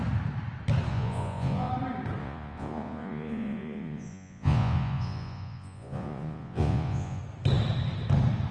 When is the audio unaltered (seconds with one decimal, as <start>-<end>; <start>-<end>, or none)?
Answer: 0.0-0.9; 1.7-2.2; 7.2-8.5